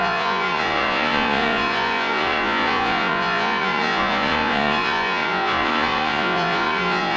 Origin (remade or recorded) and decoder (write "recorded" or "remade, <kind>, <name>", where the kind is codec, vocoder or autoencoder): remade, vocoder, Vocos